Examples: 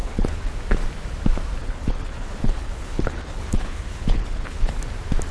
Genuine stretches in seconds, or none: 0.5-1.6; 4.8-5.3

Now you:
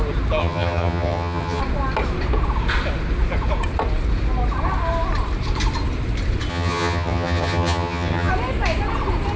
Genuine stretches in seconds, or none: 0.0-0.4; 1.6-6.5; 8.3-9.4

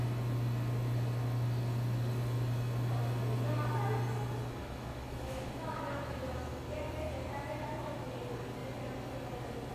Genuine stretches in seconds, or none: 0.0-4.6; 6.6-9.7

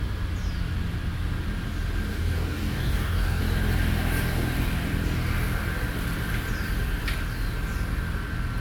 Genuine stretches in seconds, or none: 0.0-2.1; 3.4-8.6

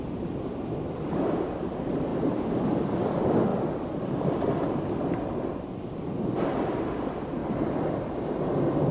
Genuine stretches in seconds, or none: 0.0-3.5; 4.8-8.9

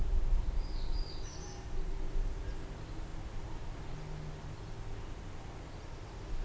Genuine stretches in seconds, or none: 2.0-3.1; 3.8-6.4

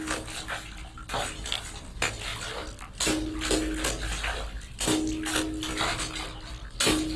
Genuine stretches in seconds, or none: 0.0-7.2